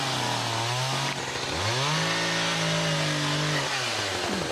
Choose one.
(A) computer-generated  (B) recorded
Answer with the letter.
B